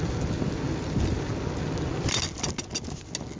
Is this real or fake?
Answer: real